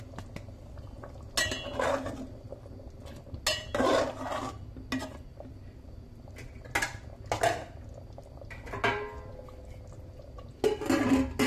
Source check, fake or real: real